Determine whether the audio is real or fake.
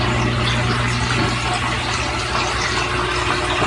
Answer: real